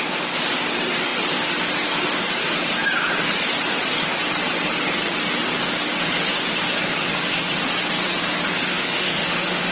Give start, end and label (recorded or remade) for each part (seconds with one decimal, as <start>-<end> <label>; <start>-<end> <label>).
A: 0.0-8.7 recorded; 8.7-9.7 remade